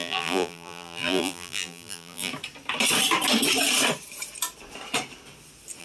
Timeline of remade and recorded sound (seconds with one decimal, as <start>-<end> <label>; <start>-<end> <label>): 0.0-2.3 remade; 2.3-5.8 recorded